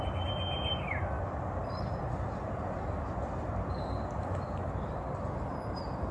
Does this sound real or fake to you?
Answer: fake